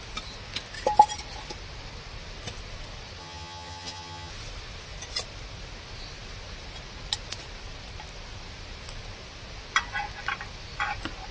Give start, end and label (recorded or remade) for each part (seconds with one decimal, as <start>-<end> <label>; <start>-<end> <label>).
0.0-3.2 recorded; 3.2-4.3 remade; 4.3-11.3 recorded